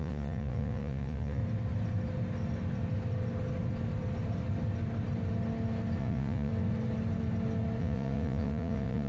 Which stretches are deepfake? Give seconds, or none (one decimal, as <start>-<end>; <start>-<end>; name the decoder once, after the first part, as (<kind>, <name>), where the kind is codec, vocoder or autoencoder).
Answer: 0.0-1.4 (vocoder, Vocos); 6.0-6.5; 7.8-9.1